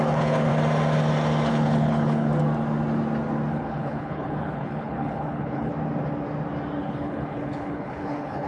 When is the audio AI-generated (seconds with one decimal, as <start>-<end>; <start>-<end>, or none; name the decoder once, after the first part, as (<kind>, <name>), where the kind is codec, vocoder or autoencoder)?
0.0-0.5 (codec, HILCodec); 1.5-2.3; 3.5-5.7; 6.8-8.5